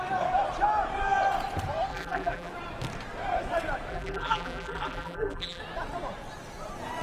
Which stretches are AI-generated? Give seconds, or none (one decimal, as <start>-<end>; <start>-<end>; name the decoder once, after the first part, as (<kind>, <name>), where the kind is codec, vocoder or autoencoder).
1.9-2.5 (vocoder, BigVGAN v2); 3.9-5.6